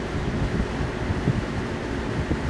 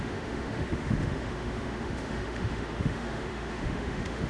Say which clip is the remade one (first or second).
second